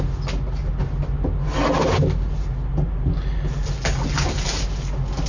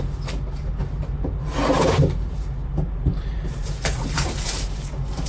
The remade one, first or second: second